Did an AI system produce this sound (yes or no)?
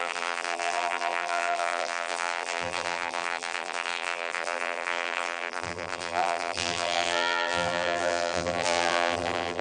yes